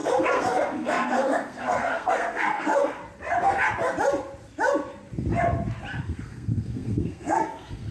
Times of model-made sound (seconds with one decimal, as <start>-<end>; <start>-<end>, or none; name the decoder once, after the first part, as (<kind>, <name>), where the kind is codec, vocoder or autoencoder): 0.0-3.0 (codec, SNAC); 6.0-7.9